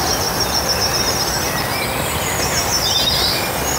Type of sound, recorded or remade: recorded